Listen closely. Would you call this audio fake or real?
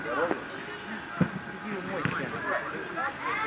real